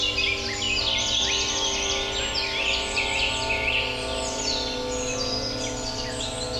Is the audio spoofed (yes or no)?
no